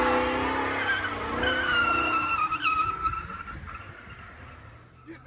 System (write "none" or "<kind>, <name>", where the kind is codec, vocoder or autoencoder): none